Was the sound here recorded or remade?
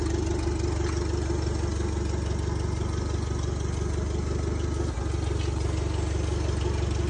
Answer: recorded